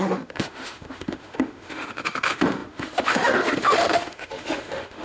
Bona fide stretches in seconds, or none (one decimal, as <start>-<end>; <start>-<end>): none